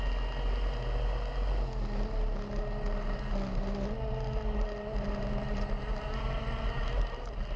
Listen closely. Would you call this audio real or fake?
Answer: real